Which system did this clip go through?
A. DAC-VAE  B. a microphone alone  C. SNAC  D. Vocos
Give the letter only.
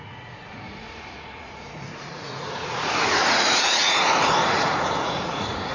D